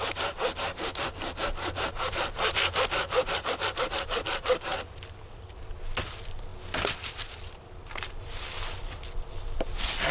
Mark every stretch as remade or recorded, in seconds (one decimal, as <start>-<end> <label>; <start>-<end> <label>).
0.0-10.1 remade